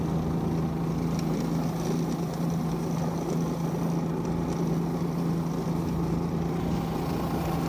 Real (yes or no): yes